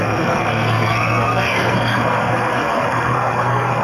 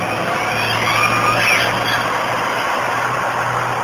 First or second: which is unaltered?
second